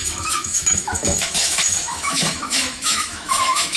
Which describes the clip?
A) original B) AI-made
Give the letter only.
B